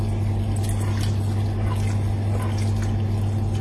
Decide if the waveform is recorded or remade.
recorded